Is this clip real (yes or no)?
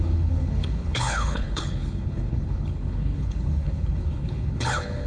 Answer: no